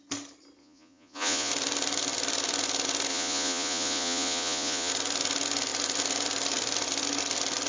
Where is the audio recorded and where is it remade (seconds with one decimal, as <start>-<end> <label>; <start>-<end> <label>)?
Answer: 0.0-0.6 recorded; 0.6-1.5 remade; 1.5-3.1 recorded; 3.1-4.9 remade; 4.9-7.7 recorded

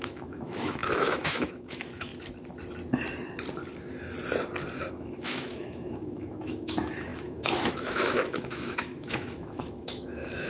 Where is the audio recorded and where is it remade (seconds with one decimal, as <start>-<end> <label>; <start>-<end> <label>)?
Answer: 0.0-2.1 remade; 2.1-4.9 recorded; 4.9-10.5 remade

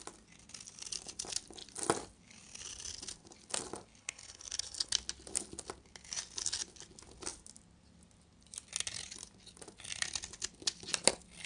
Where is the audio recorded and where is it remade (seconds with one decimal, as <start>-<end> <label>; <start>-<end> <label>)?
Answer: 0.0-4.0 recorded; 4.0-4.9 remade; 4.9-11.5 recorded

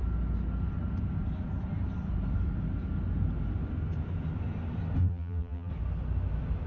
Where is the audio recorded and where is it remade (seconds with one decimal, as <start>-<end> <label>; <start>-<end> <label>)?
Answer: 0.0-5.0 recorded; 5.0-5.7 remade; 5.7-6.7 recorded

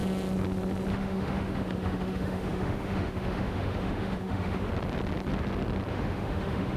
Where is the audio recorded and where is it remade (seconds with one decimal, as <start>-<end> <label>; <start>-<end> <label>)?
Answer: 0.0-0.9 recorded; 0.9-4.7 remade; 4.7-5.9 recorded; 5.9-6.8 remade

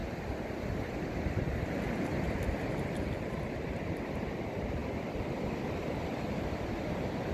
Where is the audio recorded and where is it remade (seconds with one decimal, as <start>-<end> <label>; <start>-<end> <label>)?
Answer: 0.0-7.3 recorded